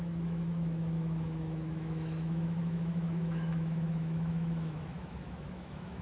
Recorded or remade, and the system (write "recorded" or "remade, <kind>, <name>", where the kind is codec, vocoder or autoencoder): remade, autoencoder, DAC-VAE